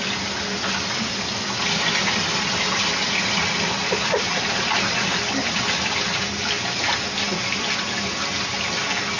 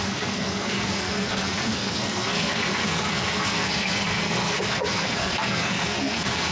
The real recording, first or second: first